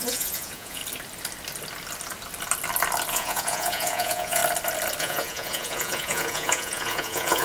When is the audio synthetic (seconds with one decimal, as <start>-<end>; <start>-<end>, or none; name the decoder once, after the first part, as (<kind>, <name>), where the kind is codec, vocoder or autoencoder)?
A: 0.0-0.8 (vocoder, Vocos); 3.1-4.4; 5.0-7.4